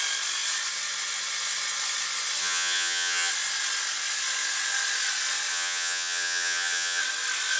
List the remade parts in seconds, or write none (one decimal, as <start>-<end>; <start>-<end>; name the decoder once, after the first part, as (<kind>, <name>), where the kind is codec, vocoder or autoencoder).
2.4-3.3 (vocoder, HiFi-GAN); 5.5-7.0